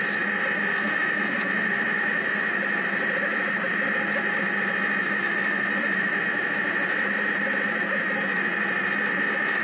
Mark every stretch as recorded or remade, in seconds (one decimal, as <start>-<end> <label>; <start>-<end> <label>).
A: 0.0-9.6 recorded